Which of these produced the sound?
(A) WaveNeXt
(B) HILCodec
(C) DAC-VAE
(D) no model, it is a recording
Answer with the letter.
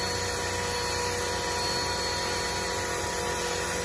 D